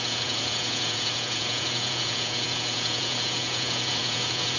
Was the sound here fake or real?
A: fake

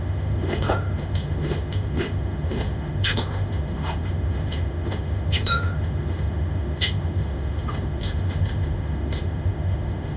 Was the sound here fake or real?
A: fake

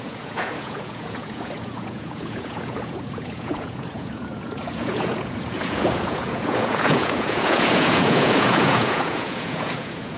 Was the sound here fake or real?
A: fake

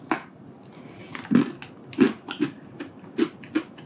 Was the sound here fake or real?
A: real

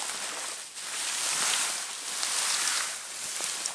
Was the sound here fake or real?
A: real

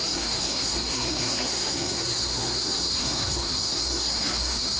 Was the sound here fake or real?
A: fake